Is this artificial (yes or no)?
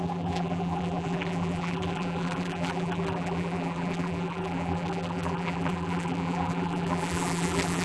yes